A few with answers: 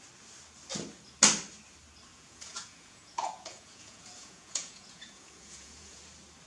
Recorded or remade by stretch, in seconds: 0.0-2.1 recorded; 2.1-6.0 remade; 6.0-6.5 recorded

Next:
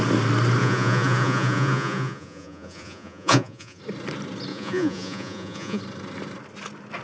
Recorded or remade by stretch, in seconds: 0.0-0.6 recorded; 0.6-3.8 remade; 3.8-4.5 recorded; 4.5-5.8 remade; 5.8-7.0 recorded

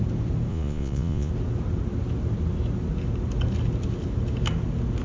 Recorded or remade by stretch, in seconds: 0.0-0.5 recorded; 0.5-1.3 remade; 1.3-5.0 recorded